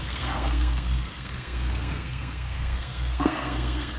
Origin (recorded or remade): remade